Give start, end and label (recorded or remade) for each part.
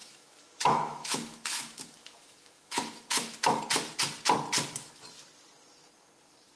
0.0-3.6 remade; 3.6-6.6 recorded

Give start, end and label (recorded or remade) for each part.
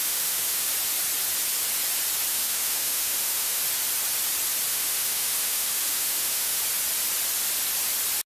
0.0-0.7 remade; 0.7-2.3 recorded; 2.3-3.6 remade; 3.6-4.7 recorded; 4.7-6.6 remade; 6.6-8.3 recorded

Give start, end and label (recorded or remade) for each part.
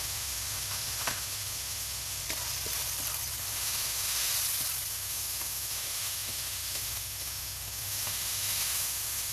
0.0-2.2 remade; 2.2-3.4 recorded; 3.4-4.3 remade; 4.3-4.9 recorded; 4.9-9.3 remade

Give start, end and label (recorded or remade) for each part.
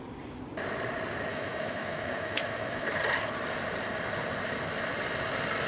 0.0-1.3 recorded; 1.3-3.0 remade; 3.0-5.7 recorded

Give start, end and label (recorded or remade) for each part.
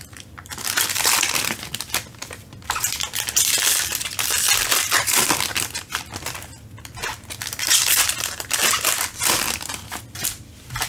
0.0-10.9 recorded